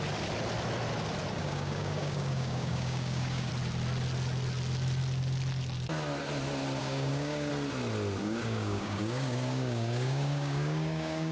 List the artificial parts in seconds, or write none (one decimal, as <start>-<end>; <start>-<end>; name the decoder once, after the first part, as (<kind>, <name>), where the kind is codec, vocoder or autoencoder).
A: 1.4-3.5 (codec, DAC); 6.8-7.5; 8.2-11.3